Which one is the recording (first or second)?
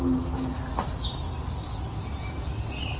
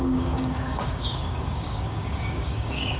first